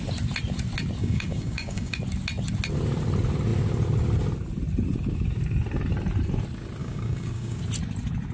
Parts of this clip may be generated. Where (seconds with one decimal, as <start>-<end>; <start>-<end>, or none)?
1.0-2.0; 6.8-7.6